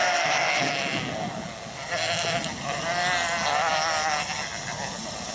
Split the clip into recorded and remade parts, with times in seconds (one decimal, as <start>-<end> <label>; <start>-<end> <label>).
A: 0.0-1.1 remade; 1.1-5.3 recorded